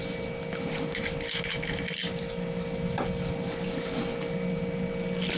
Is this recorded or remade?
recorded